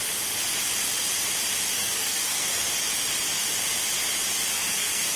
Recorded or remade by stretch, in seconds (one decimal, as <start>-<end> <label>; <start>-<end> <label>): 0.0-1.8 recorded; 1.8-2.7 remade; 2.7-4.5 recorded; 4.5-5.2 remade